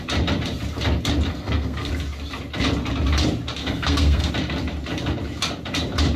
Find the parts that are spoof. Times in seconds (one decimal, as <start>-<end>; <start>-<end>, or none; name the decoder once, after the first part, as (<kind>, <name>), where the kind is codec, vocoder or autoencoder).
1.3-1.9 (codec, SNAC); 3.6-4.3